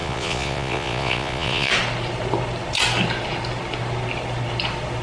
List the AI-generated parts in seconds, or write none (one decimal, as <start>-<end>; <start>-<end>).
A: 0.0-1.7